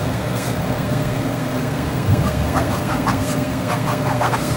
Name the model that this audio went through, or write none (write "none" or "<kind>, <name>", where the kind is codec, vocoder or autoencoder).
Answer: codec, SNAC